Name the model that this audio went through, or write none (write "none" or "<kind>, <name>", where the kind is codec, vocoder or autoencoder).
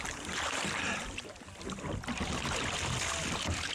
none